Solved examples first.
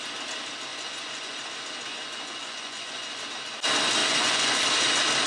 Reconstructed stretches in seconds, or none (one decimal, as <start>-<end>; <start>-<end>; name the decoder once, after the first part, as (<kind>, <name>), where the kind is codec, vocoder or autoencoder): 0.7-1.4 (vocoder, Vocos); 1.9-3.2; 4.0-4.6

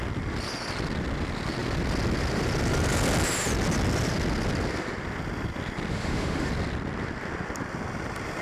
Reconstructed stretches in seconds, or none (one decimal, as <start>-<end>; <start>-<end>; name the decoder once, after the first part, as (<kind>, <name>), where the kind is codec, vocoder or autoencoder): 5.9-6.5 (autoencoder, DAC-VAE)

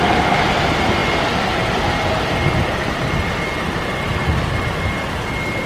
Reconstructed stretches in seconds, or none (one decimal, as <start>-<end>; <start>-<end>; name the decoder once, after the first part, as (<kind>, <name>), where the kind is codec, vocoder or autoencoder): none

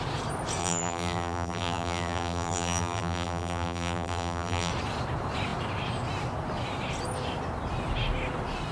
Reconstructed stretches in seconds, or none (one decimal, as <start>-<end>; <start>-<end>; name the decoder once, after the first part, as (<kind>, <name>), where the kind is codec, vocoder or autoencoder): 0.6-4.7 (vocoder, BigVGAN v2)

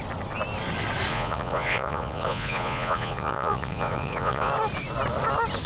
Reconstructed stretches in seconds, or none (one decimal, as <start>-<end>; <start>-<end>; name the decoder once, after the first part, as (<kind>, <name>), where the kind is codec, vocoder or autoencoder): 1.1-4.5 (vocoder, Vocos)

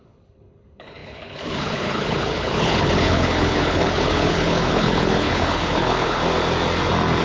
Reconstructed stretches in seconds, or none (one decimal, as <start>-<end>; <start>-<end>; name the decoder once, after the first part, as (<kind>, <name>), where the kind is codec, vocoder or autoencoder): 0.0-6.2 (codec, HILCodec)

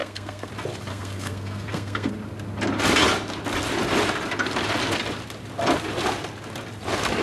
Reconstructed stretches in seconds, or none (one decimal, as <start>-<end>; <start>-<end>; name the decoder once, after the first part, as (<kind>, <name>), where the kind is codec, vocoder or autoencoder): 0.0-0.5 (codec, SNAC); 0.9-2.1